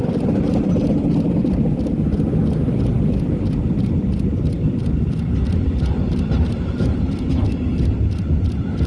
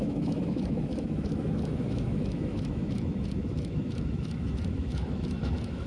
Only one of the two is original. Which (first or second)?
first